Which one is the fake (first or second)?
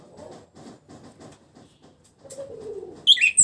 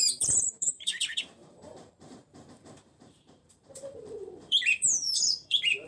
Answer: second